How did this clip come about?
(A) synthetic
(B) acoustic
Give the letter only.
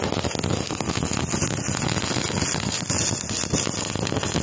B